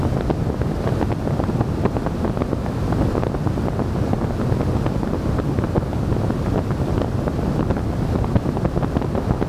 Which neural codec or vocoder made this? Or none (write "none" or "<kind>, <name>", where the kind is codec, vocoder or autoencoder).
none